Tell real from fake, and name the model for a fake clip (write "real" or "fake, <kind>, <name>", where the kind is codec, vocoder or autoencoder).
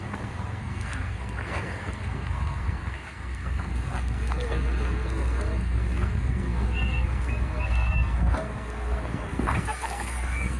fake, codec, SNAC